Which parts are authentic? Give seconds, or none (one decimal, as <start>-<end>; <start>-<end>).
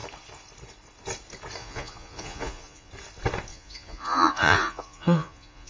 0.0-1.6; 2.9-3.5